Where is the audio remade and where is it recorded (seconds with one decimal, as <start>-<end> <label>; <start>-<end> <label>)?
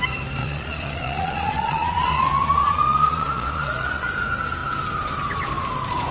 0.0-0.4 recorded; 0.4-4.1 remade; 4.1-6.1 recorded